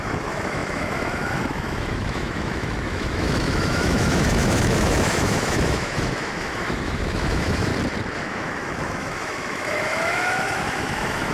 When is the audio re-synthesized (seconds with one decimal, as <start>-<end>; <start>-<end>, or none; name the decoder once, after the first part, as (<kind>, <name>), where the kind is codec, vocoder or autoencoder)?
0.0-7.7 (autoencoder, DAC-VAE); 8.2-11.3